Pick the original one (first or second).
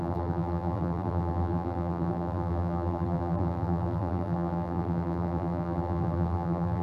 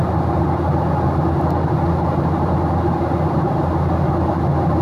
second